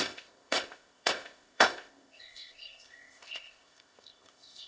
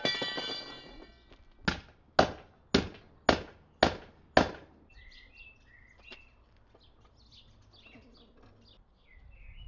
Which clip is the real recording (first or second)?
second